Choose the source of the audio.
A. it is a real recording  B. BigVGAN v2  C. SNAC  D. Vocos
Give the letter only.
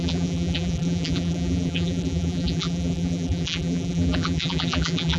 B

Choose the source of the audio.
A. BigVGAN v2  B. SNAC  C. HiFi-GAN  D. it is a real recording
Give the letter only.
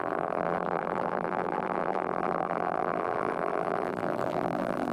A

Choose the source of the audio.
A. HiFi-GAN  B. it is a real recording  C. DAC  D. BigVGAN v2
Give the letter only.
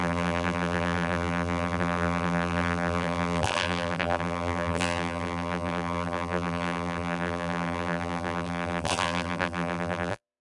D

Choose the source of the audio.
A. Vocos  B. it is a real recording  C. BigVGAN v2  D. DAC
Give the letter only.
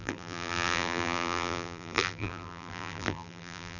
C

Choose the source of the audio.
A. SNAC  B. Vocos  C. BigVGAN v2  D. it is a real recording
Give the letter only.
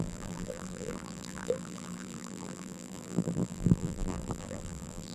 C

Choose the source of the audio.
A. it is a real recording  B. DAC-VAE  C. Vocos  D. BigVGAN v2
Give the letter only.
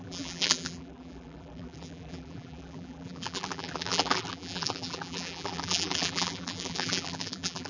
D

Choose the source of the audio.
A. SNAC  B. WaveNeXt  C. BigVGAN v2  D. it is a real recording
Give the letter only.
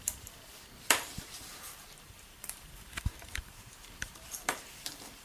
C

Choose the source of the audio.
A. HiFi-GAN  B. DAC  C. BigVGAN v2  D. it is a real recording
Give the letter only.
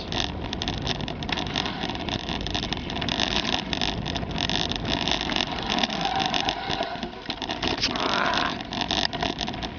D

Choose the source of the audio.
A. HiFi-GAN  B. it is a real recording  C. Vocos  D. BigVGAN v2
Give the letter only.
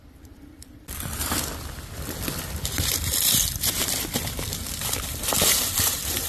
D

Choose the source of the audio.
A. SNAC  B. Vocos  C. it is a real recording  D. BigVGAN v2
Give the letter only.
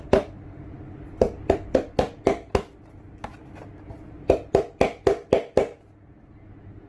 C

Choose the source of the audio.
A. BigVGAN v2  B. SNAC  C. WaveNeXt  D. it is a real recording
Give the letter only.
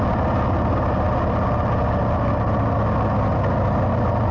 D